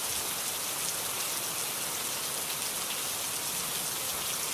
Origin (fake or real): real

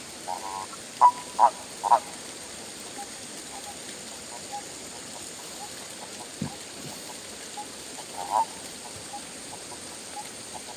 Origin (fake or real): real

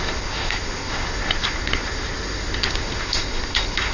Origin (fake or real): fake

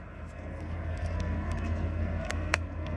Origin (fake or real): fake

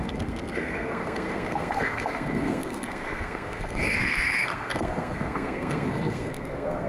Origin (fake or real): fake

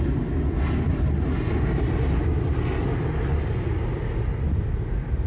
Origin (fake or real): real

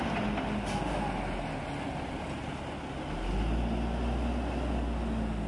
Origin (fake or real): real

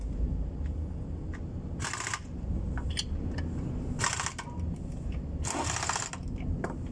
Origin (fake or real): real